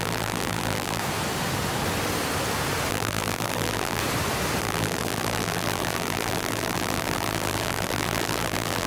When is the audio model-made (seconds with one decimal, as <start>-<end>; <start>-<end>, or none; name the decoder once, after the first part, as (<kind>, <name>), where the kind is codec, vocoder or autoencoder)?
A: 0.0-1.0 (vocoder, BigVGAN v2); 2.9-4.0; 4.6-8.9